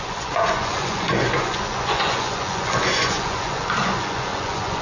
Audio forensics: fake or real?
fake